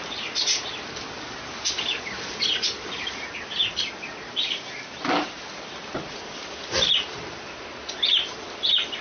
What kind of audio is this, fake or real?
real